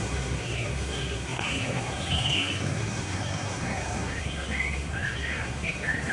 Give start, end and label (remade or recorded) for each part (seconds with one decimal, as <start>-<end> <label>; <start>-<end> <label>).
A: 0.0-6.1 remade